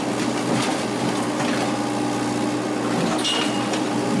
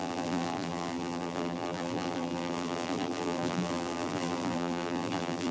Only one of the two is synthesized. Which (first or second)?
second